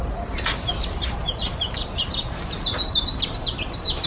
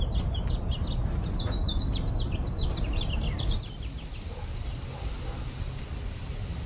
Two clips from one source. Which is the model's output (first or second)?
first